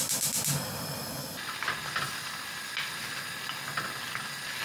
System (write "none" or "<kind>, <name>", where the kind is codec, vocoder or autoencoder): none